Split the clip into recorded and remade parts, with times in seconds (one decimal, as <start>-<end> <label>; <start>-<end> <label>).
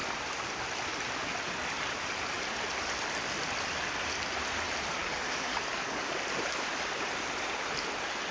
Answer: 0.0-5.0 recorded; 5.0-6.1 remade; 6.1-8.3 recorded